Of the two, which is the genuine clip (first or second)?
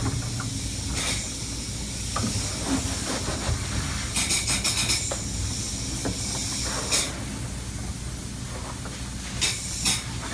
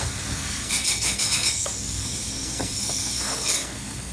first